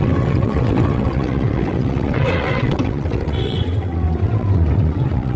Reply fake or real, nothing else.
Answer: fake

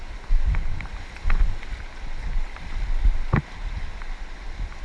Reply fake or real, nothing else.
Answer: real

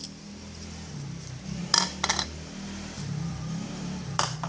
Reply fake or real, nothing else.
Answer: fake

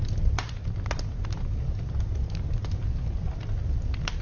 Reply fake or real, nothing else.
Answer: real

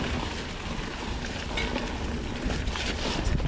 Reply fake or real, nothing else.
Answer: real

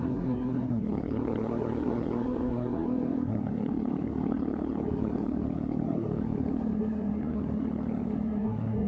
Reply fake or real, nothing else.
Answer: fake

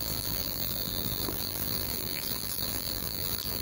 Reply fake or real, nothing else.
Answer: fake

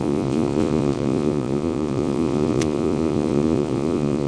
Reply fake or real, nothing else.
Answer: fake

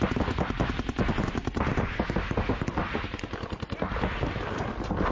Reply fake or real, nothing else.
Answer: real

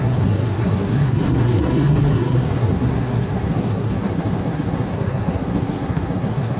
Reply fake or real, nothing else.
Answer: fake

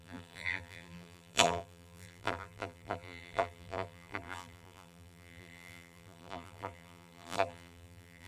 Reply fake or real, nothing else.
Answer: fake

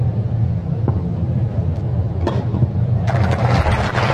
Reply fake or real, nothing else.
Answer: real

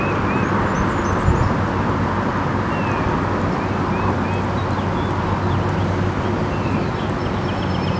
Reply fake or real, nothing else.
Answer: real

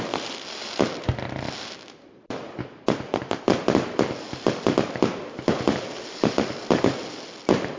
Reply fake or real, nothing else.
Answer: real